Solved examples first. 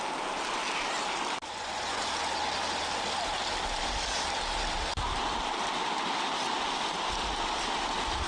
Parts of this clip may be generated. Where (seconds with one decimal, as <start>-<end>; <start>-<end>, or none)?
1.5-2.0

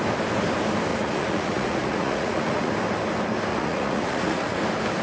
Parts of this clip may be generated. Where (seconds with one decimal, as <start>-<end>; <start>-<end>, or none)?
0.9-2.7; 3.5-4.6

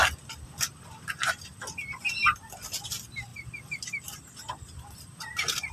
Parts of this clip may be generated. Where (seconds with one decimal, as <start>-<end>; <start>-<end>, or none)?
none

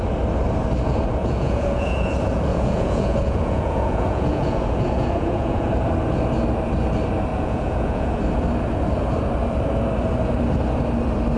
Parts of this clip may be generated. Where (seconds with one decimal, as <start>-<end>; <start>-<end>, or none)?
1.2-2.1; 2.5-5.7; 7.3-8.2